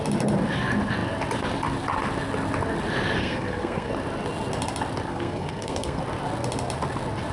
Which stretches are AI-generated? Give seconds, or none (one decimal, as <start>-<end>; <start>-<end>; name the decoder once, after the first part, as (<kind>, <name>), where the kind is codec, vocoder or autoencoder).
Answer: 3.2-3.9 (codec, SNAC); 5.1-6.0